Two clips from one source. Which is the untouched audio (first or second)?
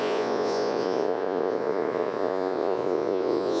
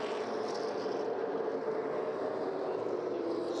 second